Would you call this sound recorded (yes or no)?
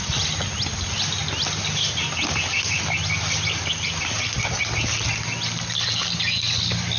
yes